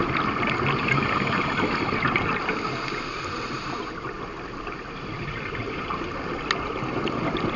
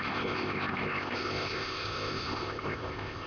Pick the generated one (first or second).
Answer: second